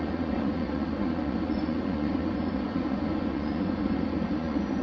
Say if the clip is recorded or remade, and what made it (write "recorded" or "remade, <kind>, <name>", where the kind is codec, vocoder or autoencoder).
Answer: remade, vocoder, Vocos